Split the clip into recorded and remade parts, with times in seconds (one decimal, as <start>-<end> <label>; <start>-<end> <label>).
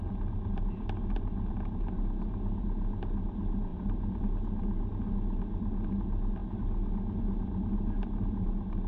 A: 0.0-3.7 recorded; 3.7-4.2 remade; 4.2-8.9 recorded